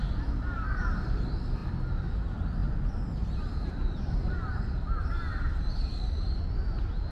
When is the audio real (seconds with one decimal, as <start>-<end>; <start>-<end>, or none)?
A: 0.0-7.1